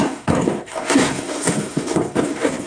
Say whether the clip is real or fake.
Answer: fake